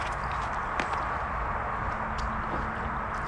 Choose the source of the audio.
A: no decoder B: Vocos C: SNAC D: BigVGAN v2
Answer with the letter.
A